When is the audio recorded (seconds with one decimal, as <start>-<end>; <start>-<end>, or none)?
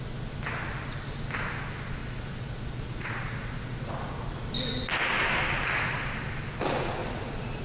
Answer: 0.0-2.0; 3.8-7.0